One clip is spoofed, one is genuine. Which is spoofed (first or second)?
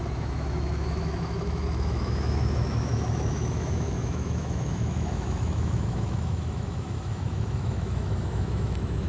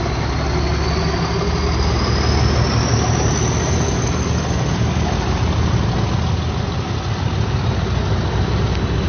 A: first